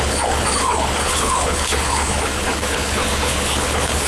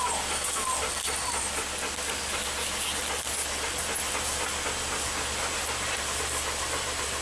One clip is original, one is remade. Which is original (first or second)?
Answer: second